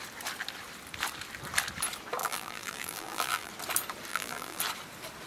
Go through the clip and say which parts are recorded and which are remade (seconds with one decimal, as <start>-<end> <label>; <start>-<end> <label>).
0.0-2.2 recorded; 2.2-3.5 remade; 3.5-4.1 recorded; 4.1-4.6 remade; 4.6-5.3 recorded